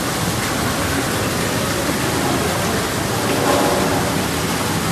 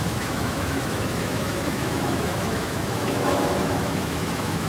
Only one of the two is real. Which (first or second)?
first